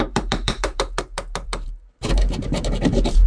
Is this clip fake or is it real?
fake